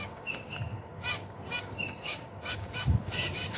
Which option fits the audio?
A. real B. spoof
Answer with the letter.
B